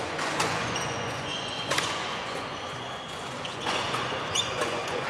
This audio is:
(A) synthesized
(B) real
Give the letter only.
A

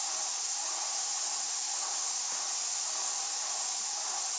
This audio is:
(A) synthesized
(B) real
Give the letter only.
A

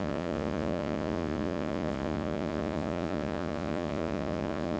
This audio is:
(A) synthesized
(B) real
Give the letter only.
A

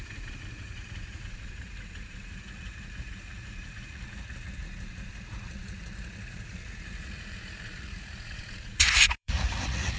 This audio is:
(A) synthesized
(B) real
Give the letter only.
A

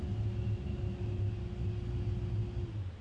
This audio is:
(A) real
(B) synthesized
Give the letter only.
A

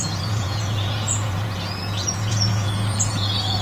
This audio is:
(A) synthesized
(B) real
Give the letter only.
A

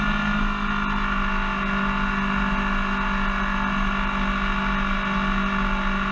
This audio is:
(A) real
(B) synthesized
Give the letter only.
A